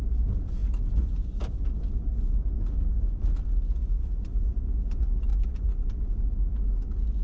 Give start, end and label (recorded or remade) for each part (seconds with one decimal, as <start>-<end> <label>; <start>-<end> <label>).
0.0-5.3 recorded; 5.3-5.9 remade; 5.9-7.2 recorded